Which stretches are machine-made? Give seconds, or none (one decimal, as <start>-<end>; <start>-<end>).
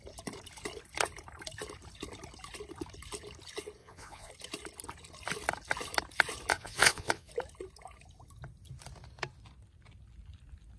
3.8-4.3; 6.5-7.3